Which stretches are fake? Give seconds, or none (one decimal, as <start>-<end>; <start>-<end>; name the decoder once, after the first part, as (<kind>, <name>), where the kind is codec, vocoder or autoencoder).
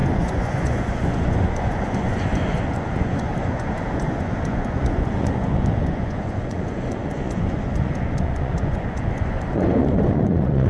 0.0-10.7 (vocoder, Vocos)